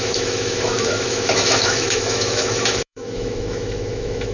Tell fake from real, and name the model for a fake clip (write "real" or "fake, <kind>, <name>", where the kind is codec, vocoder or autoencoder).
fake, autoencoder, DAC-VAE